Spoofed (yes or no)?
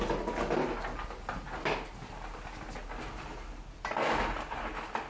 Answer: no